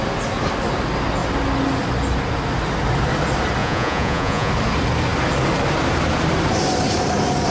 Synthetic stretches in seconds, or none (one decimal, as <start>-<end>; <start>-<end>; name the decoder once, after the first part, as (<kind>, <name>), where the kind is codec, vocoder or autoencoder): 3.6-4.5 (vocoder, Vocos)